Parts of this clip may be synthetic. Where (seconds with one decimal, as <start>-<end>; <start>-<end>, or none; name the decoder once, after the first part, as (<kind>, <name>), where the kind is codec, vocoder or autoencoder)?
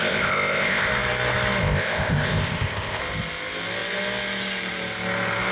0.0-0.9 (codec, ZipCodec); 1.6-3.0